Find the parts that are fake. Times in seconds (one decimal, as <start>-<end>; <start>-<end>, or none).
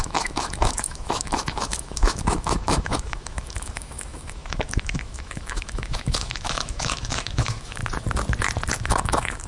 0.0-7.8; 8.7-9.5